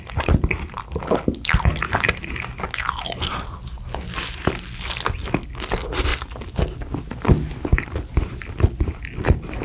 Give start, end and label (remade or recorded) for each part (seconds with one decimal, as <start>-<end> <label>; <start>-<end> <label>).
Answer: 0.0-9.6 recorded